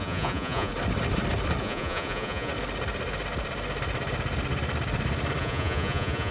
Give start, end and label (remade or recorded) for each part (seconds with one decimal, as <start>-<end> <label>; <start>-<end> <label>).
0.0-0.7 remade; 0.7-1.6 recorded; 1.6-2.5 remade; 2.5-5.4 recorded; 5.4-6.3 remade